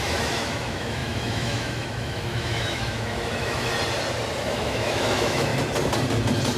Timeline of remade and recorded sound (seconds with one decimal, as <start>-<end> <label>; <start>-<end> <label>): 0.0-3.7 remade; 3.7-4.3 recorded; 4.3-5.5 remade; 5.5-6.6 recorded